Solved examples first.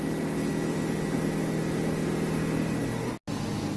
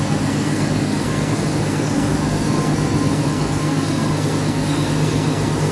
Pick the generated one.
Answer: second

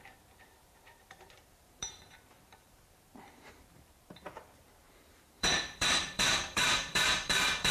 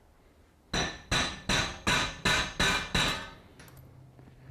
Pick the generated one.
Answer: first